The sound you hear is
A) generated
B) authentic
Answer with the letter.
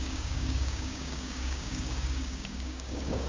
A